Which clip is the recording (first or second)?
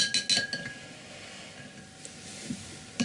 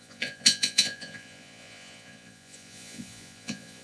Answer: first